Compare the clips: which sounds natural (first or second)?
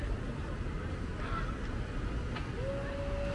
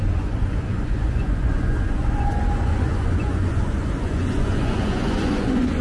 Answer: first